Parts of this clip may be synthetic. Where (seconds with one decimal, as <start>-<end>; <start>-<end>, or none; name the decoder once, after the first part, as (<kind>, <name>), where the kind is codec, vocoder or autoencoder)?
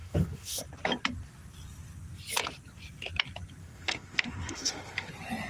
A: 0.0-0.6 (autoencoder, DAC-VAE); 3.6-5.1